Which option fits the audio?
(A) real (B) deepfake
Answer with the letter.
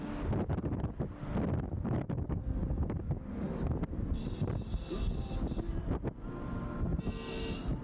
A